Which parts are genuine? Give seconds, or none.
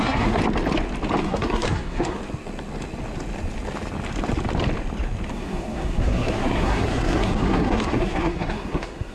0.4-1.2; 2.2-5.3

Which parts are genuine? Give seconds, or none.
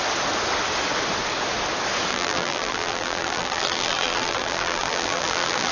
0.0-2.1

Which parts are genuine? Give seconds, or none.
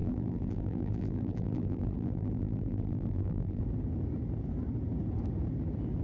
3.6-6.0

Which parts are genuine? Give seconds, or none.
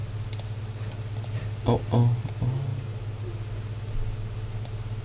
0.0-5.0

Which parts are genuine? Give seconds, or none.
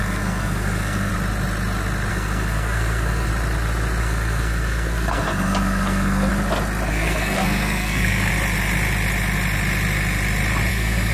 1.1-2.1; 3.3-4.0; 6.3-6.9; 8.3-10.7